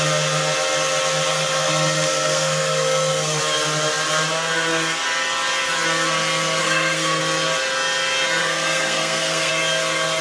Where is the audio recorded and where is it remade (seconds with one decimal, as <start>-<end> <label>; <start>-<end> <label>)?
0.0-1.3 recorded; 1.3-3.4 remade; 3.4-6.6 recorded; 6.6-7.2 remade; 7.2-8.4 recorded; 8.4-9.5 remade; 9.5-10.2 recorded